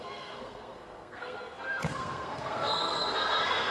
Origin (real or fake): fake